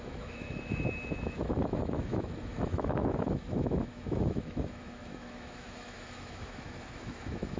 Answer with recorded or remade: remade